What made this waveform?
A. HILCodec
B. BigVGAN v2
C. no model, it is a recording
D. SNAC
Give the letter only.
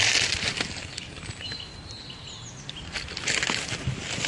C